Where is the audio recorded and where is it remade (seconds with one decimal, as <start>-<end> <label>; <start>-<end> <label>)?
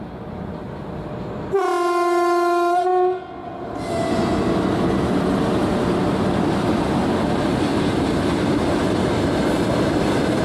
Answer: 0.0-10.4 recorded